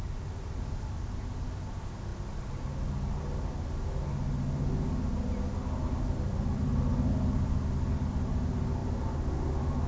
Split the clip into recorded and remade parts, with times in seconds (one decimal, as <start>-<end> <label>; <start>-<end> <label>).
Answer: 0.0-9.9 recorded